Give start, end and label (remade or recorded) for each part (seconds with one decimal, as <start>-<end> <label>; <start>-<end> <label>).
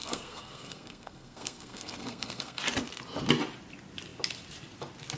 0.0-2.6 remade; 2.6-5.2 recorded